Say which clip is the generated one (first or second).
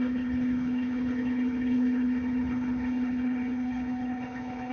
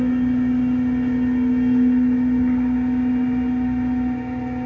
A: first